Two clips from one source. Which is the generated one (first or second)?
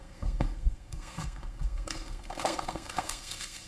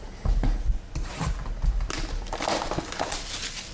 first